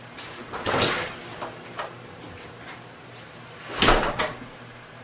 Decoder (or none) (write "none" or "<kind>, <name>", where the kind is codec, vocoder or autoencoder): vocoder, BigVGAN v2